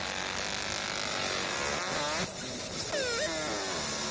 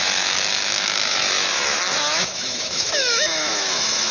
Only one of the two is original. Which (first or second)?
first